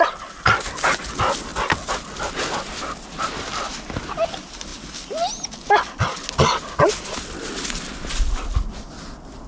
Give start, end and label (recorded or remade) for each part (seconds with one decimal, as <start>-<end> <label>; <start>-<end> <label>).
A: 0.0-9.5 recorded